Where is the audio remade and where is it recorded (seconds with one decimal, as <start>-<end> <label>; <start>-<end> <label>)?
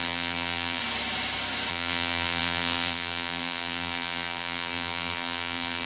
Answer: 0.0-0.8 remade; 0.8-1.7 recorded; 1.7-5.9 remade